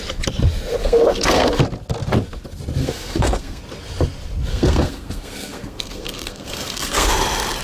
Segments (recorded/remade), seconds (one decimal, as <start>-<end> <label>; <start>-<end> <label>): 0.0-0.8 recorded; 0.8-1.6 remade; 1.6-2.8 recorded; 2.8-3.6 remade; 3.6-4.5 recorded; 4.5-7.1 remade; 7.1-7.6 recorded